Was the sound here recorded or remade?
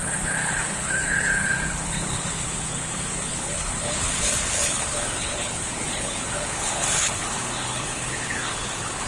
remade